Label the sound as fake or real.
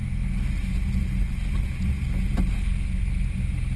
real